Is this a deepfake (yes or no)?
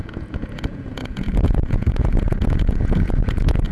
yes